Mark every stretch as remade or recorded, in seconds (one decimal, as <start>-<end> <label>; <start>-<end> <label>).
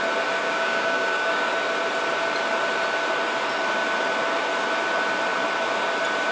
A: 0.0-0.4 recorded; 0.4-1.5 remade; 1.5-6.3 recorded